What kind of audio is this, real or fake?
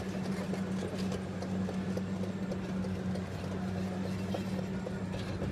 real